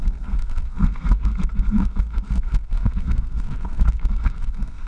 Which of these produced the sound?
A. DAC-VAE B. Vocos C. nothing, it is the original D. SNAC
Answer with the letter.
D